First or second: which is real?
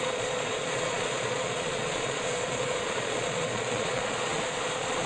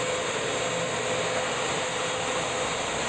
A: second